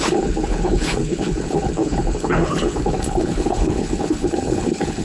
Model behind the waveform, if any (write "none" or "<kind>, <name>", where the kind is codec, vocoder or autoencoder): codec, HILCodec